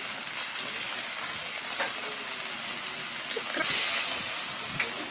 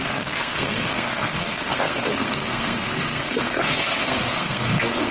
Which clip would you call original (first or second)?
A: first